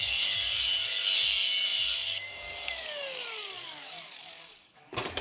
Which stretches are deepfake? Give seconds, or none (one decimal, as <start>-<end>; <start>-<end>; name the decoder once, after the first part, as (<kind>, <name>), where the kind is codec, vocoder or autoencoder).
0.0-5.2 (codec, DAC)